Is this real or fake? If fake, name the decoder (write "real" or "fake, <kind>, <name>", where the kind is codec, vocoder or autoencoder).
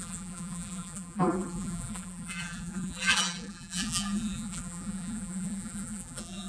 fake, vocoder, BigVGAN v2